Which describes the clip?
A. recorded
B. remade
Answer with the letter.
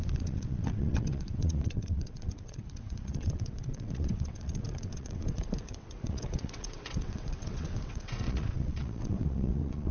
B